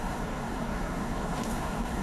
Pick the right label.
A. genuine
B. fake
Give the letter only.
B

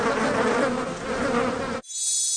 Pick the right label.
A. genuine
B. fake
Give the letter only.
A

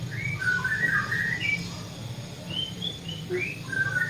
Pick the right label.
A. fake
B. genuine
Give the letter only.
B